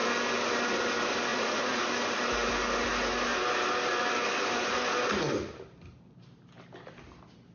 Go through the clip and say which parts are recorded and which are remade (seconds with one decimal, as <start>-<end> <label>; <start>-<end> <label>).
0.0-1.3 recorded; 1.3-1.8 remade; 1.8-7.5 recorded